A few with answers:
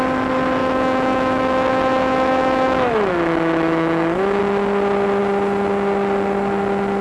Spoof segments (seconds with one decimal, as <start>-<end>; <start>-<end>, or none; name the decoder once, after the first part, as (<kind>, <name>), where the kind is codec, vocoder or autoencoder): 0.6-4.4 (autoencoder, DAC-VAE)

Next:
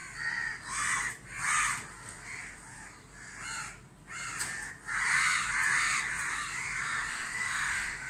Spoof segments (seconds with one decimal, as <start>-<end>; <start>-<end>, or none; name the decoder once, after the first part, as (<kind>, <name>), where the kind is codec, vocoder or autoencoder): 7.1-8.1 (autoencoder, DAC-VAE)

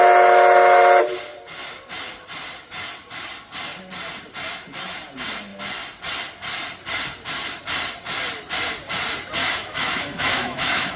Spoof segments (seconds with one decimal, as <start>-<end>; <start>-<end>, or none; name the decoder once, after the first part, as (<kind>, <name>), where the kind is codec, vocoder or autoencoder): 9.4-11.0 (autoencoder, DAC-VAE)

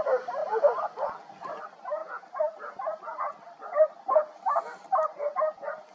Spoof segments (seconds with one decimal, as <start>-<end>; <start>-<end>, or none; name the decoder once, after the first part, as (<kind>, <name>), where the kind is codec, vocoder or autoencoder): none